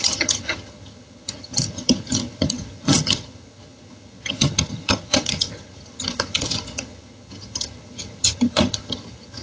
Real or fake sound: fake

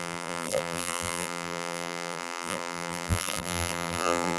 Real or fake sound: fake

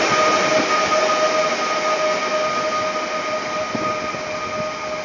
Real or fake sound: real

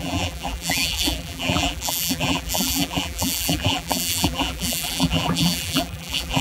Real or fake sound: fake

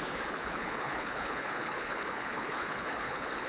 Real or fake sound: fake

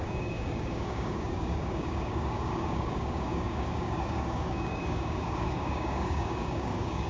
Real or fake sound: fake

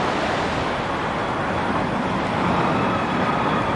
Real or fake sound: real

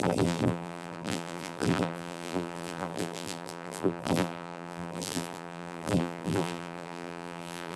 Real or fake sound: fake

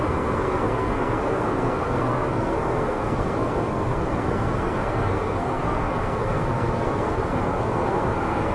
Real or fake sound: fake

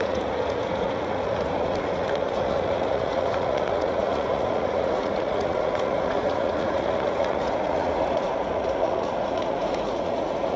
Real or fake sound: fake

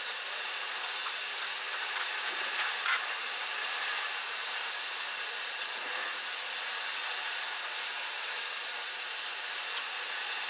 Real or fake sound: fake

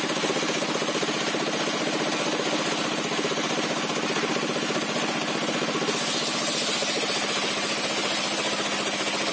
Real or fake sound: real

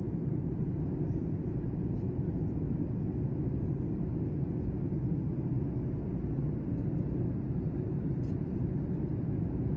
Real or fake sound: real